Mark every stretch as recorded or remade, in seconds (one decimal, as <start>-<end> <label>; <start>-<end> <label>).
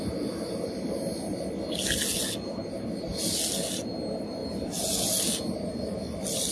0.0-6.5 recorded